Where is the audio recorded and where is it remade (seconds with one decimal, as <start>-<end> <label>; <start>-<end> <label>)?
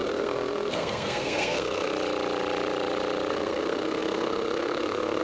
0.0-1.9 remade; 1.9-3.3 recorded; 3.3-5.2 remade